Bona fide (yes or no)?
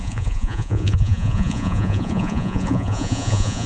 no